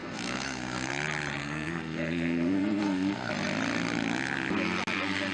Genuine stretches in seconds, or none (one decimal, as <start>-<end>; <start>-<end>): 0.9-1.4; 3.3-5.3